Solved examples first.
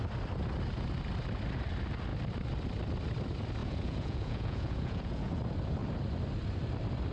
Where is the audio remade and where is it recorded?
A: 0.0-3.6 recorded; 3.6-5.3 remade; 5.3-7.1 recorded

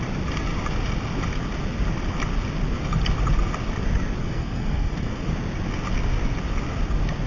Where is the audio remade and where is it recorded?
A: 0.0-4.2 recorded; 4.2-5.3 remade; 5.3-7.3 recorded

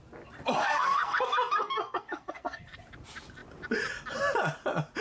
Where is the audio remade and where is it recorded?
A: 0.0-0.6 recorded; 0.6-2.8 remade; 2.8-5.0 recorded

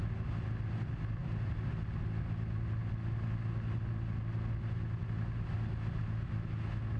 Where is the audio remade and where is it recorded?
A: 0.0-7.0 recorded